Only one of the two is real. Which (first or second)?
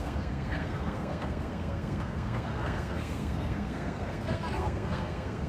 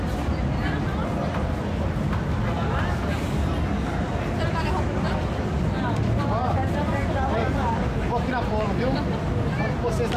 second